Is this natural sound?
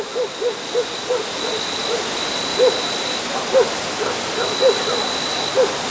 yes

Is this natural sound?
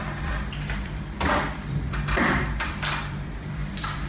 no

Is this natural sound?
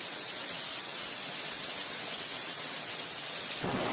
no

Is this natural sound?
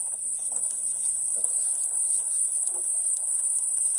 yes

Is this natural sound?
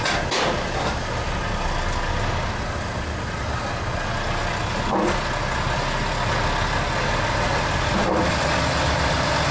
yes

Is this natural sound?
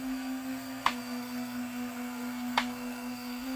no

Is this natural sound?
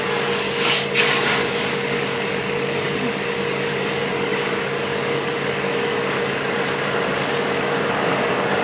no